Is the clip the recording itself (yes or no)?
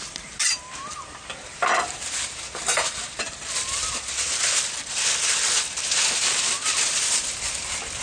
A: no